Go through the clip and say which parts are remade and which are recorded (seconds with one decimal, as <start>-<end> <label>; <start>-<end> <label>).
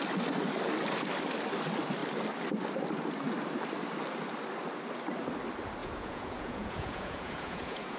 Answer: 0.0-5.8 recorded; 5.8-8.0 remade